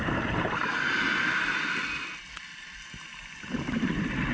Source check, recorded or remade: recorded